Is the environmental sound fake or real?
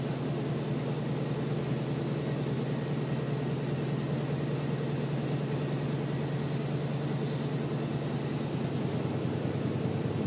real